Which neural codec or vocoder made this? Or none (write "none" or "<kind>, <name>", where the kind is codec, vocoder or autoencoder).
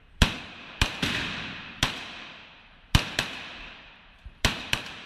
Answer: vocoder, BigVGAN v2